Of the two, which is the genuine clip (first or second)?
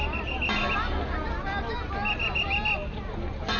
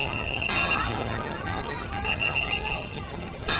first